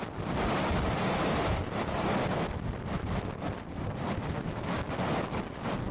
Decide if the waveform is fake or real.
fake